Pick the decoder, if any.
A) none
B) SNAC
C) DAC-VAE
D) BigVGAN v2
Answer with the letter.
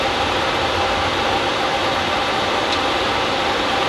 D